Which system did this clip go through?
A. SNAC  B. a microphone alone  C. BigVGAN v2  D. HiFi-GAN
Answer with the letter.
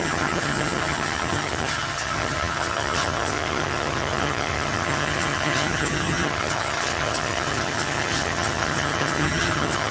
D